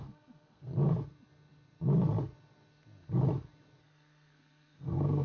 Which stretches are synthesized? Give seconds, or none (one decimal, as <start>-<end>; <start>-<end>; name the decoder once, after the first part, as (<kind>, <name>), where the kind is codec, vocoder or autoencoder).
0.0-0.7 (codec, SNAC); 3.8-5.2